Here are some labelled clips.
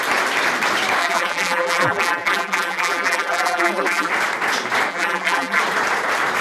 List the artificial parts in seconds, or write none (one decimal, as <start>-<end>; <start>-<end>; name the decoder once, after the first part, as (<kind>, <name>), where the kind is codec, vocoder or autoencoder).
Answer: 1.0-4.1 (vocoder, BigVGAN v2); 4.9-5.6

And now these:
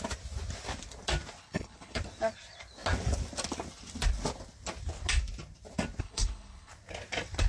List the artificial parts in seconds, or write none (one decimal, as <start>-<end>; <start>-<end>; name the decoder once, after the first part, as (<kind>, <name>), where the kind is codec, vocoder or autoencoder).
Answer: 1.4-2.0 (codec, HILCodec); 6.0-6.7

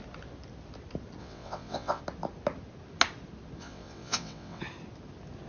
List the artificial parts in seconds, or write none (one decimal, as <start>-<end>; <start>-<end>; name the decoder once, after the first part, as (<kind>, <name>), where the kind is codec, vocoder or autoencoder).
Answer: 1.2-2.0 (vocoder, WaveNeXt); 3.6-4.6